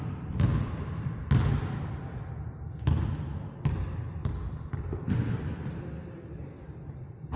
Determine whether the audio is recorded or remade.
recorded